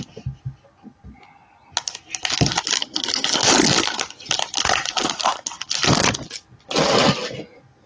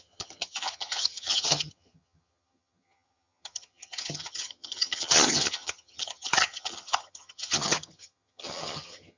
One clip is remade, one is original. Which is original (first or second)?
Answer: first